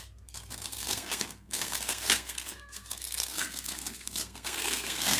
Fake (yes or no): yes